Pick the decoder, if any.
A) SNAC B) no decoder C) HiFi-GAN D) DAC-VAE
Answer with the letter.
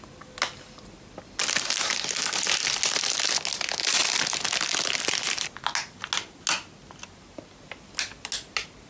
B